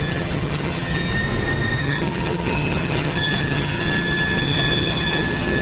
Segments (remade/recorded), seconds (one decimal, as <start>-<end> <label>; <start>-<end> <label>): 0.0-1.1 remade; 1.1-1.8 recorded; 1.8-5.6 remade